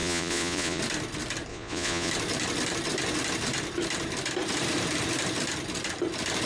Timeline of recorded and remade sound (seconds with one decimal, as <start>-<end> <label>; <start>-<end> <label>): 0.0-0.8 remade; 0.8-1.5 recorded; 1.5-2.1 remade; 2.1-6.5 recorded

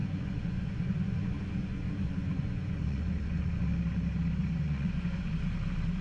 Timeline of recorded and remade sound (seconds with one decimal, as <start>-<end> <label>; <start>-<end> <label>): 0.0-3.6 remade; 3.6-4.4 recorded; 4.4-5.3 remade; 5.3-6.0 recorded

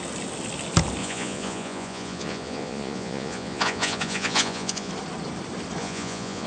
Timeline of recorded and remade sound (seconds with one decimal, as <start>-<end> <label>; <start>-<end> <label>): 0.0-1.0 recorded; 1.0-4.9 remade; 4.9-5.8 recorded; 5.8-6.5 remade